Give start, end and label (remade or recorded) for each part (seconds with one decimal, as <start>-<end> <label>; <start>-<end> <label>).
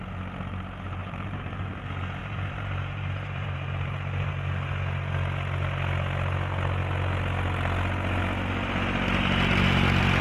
0.0-1.0 recorded; 1.0-1.7 remade; 1.7-2.2 recorded; 2.2-4.3 remade; 4.3-10.2 recorded